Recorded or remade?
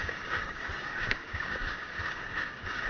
remade